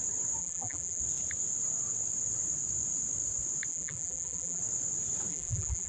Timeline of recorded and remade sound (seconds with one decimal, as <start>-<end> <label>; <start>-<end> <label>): 0.0-0.4 recorded; 0.4-1.0 remade; 1.0-3.7 recorded; 3.7-4.6 remade; 4.6-5.3 recorded; 5.3-5.9 remade